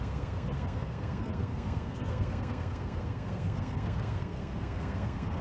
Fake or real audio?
fake